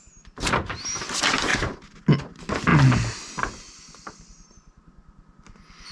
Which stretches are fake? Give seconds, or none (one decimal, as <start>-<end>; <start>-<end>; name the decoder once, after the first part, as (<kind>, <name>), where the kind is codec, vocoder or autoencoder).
none